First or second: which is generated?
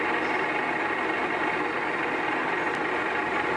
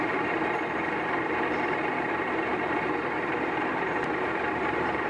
second